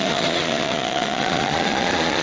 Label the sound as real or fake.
fake